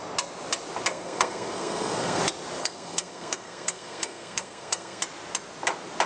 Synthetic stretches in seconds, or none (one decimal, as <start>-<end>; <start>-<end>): 0.9-2.2; 2.6-5.0